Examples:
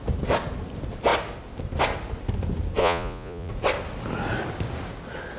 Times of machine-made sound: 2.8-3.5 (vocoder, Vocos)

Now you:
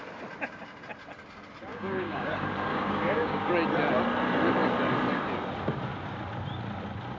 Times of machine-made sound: 1.7-2.3 (codec, DAC); 2.7-3.5

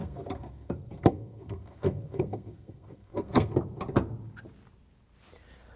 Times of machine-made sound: 0.0-3.5 (codec, SNAC)

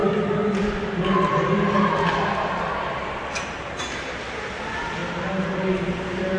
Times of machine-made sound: none

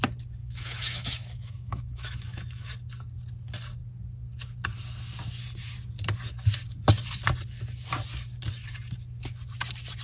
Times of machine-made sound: 0.4-2.7 (autoencoder, DAC-VAE)

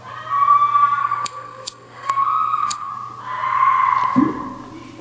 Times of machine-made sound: 1.0-2.9 (codec, SNAC)

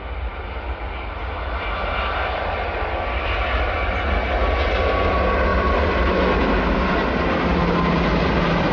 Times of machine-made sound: none